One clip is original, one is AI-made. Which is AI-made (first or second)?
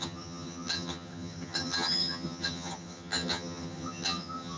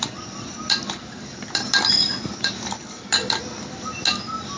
first